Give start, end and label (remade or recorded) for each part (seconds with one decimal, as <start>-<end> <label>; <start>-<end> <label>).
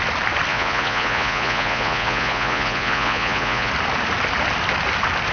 0.0-0.5 recorded; 0.5-3.7 remade; 3.7-5.3 recorded